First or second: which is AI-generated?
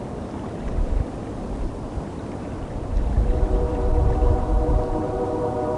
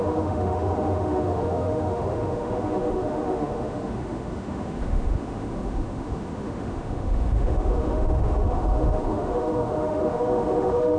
second